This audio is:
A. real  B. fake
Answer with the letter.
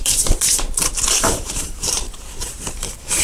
B